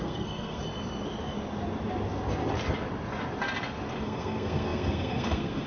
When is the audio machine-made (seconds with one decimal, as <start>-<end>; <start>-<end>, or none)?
0.0-0.6; 4.0-5.7

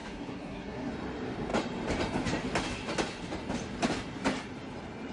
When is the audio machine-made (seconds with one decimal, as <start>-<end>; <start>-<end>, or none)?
0.0-0.9

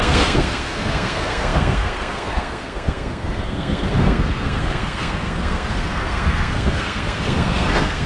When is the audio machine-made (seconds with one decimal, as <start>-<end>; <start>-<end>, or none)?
0.0-8.1

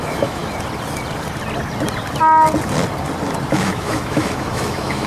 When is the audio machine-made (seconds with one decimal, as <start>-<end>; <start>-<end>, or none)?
0.0-0.4; 3.5-5.1

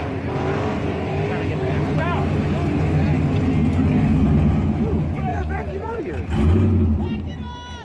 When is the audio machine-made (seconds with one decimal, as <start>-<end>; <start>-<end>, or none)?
5.3-6.0

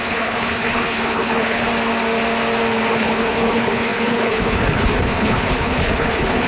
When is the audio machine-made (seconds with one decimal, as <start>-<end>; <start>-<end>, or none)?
0.0-1.7; 2.9-6.5

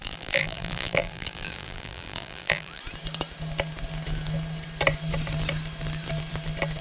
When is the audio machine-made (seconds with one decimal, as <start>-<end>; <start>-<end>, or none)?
0.0-2.8

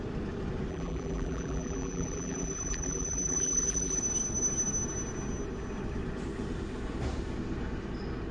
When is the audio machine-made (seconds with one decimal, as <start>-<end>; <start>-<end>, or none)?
0.7-4.0